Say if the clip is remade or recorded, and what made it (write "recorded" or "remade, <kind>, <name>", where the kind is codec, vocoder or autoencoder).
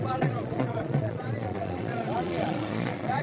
remade, vocoder, Vocos